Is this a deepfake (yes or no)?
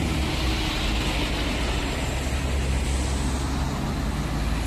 no